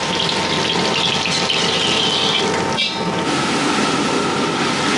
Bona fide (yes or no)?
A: yes